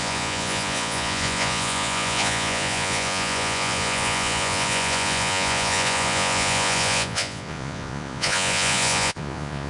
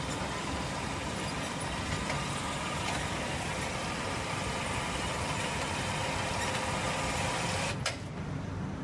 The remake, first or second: first